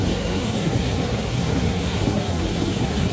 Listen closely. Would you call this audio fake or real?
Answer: fake